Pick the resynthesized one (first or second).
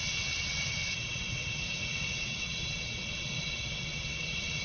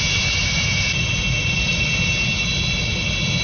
first